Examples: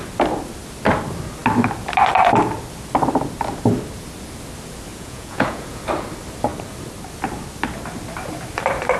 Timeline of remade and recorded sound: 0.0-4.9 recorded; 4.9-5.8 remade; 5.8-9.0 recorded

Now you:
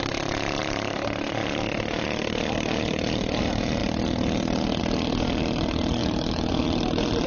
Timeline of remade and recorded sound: 0.0-6.0 recorded; 6.0-6.5 remade; 6.5-7.3 recorded